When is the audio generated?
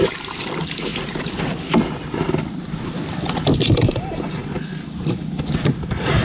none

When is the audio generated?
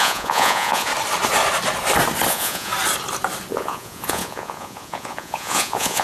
0.0-0.9 (vocoder, Vocos); 2.3-2.7; 3.5-6.0